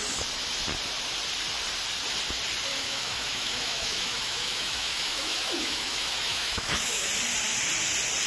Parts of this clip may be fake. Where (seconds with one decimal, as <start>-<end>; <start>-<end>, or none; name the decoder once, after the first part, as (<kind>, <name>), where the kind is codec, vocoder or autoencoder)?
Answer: 2.7-7.1 (autoencoder, DAC-VAE)